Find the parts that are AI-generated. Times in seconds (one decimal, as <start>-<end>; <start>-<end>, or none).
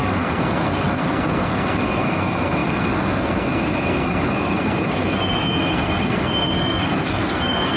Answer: 0.0-7.8